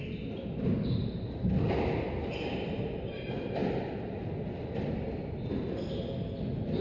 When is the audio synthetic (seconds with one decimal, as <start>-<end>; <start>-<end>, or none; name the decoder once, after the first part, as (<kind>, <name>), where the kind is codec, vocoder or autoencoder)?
none